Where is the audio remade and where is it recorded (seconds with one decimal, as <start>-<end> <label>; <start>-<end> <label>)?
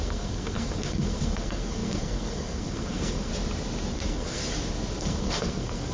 0.0-3.3 remade; 3.3-3.9 recorded; 3.9-4.4 remade; 4.4-5.0 recorded; 5.0-5.9 remade